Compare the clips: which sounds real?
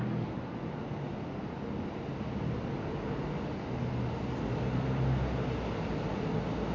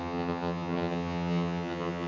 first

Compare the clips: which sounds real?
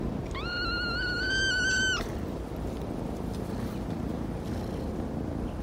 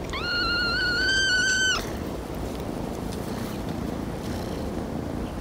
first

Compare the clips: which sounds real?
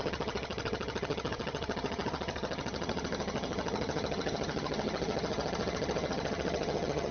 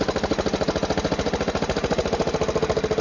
second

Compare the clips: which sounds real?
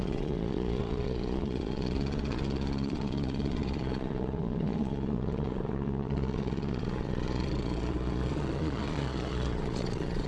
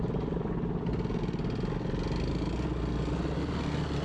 second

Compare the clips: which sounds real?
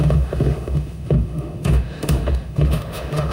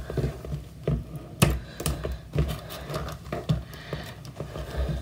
second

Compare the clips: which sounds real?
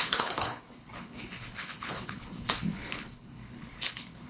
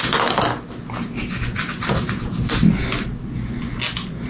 second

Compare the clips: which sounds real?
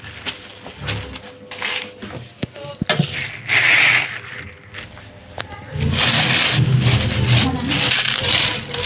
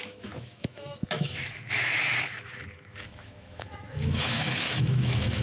first